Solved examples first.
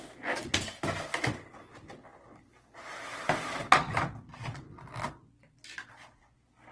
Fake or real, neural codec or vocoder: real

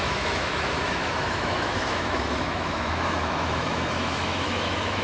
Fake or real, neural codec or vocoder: fake, autoencoder, DAC-VAE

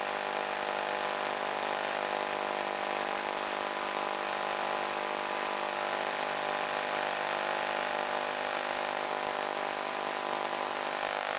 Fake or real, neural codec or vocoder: real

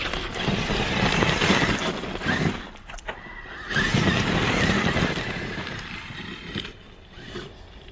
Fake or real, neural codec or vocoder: real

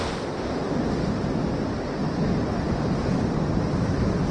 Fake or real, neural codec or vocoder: real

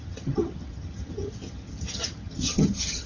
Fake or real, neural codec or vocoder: fake, vocoder, HiFi-GAN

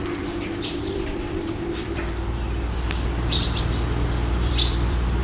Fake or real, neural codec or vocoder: fake, vocoder, BigVGAN v2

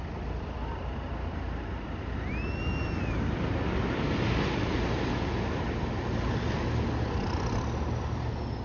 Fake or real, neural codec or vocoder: real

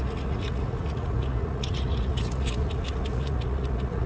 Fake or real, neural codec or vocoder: fake, vocoder, Vocos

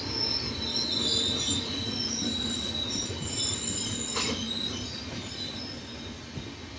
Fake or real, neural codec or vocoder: real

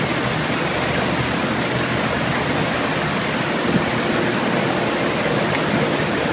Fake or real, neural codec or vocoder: real